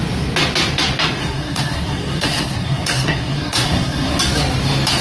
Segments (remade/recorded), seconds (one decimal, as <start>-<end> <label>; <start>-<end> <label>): 0.0-1.2 recorded; 1.2-4.2 remade; 4.2-5.0 recorded